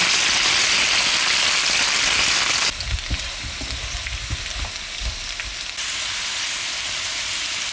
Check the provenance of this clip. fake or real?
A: real